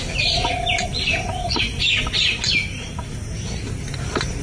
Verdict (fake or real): real